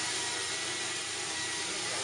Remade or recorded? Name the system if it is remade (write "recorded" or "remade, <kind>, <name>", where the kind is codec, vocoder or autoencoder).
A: recorded